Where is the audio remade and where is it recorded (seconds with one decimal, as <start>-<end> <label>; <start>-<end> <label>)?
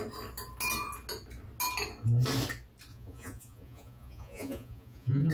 0.0-2.9 recorded; 2.9-5.3 remade